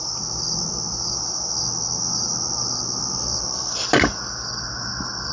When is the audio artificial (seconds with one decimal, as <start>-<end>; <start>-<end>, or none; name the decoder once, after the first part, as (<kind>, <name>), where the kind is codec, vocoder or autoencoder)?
none